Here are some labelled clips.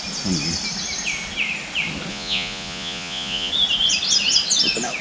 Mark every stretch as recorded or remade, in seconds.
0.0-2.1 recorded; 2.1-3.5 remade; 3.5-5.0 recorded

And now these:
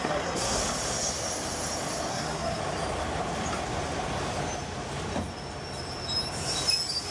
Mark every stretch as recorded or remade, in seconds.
0.0-0.6 remade; 0.6-2.1 recorded; 2.1-2.6 remade; 2.6-7.1 recorded